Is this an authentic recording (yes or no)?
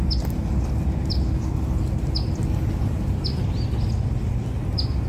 yes